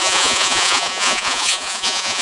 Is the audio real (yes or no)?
no